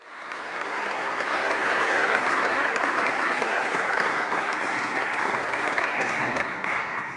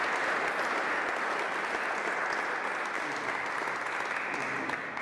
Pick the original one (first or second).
second